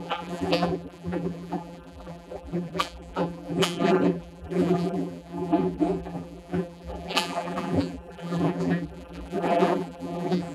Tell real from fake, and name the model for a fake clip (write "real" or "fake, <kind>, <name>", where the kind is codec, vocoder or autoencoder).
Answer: fake, vocoder, BigVGAN v2